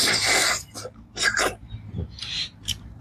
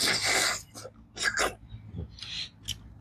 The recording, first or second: second